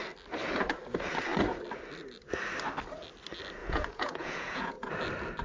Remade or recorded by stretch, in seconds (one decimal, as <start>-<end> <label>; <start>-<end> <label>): 0.0-3.6 recorded; 3.6-4.9 remade; 4.9-5.4 recorded